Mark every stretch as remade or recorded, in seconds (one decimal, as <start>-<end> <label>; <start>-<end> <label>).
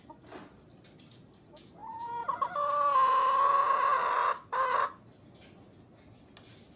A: 0.0-6.8 recorded